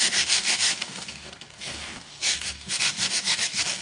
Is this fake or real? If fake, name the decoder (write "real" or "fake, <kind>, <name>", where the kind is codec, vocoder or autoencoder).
fake, codec, DAC